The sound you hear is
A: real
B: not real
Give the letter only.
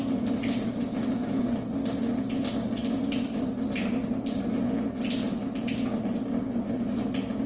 A